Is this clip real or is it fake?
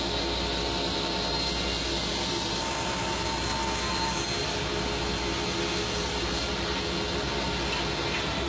real